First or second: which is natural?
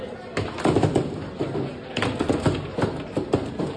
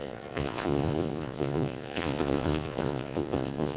first